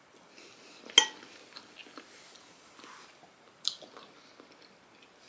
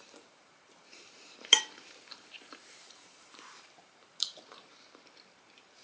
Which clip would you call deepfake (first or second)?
second